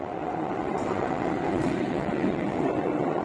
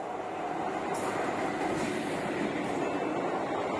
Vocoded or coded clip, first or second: first